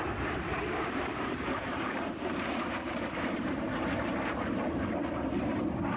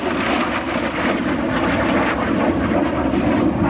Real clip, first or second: second